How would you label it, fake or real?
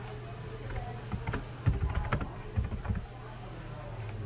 real